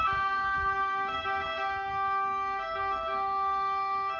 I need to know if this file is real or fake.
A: fake